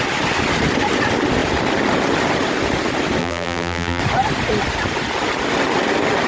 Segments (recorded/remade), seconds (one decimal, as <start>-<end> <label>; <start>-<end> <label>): 0.0-3.2 recorded; 3.2-4.0 remade; 4.0-6.3 recorded